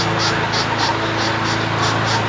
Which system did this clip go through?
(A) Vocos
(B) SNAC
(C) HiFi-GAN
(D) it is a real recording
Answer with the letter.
D